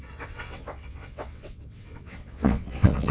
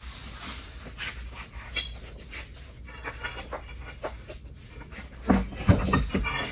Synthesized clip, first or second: first